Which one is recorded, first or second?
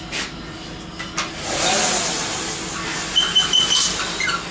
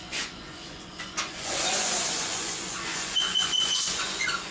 first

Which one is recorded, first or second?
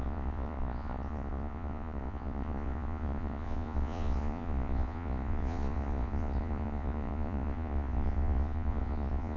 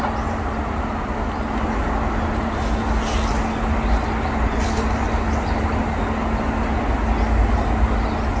second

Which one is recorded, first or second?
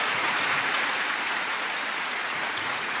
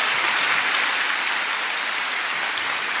second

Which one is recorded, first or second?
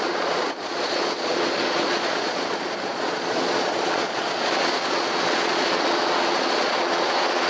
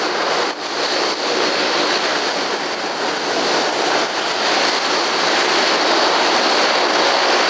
second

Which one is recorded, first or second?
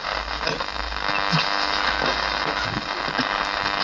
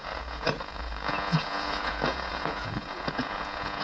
first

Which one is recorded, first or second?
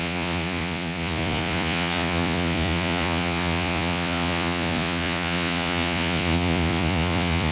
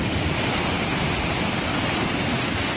second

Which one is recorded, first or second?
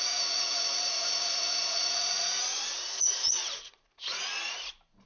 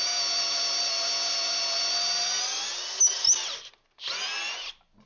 second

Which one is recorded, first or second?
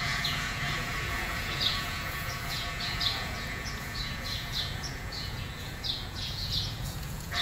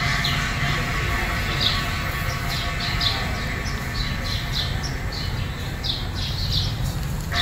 second